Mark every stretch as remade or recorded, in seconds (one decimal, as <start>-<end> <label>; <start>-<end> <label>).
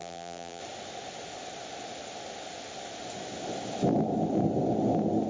0.0-0.6 remade; 0.6-5.3 recorded